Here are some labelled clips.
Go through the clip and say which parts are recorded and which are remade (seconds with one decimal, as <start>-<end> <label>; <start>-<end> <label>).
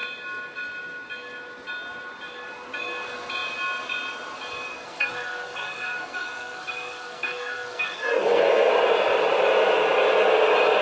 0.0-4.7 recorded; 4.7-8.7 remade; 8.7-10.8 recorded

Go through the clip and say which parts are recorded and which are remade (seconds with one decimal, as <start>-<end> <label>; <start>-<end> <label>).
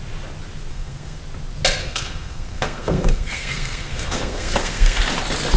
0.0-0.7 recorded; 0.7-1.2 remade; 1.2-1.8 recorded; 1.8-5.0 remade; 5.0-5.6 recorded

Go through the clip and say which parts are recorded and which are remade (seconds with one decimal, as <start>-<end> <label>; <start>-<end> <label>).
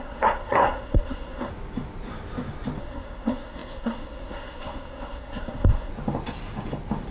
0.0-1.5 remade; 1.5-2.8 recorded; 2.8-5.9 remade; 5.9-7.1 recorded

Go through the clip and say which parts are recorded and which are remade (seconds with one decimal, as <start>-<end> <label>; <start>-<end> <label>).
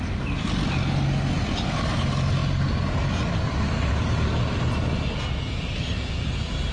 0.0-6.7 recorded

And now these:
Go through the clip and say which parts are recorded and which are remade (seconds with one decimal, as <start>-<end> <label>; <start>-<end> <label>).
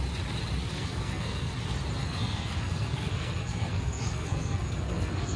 0.0-0.7 recorded; 0.7-1.5 remade; 1.5-2.0 recorded; 2.0-5.4 remade